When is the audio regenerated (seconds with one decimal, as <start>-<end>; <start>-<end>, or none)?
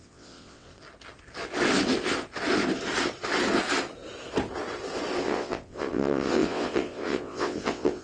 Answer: 0.0-0.7; 5.2-8.0